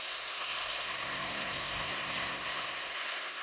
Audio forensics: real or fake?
fake